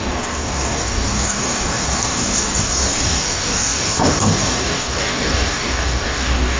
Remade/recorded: remade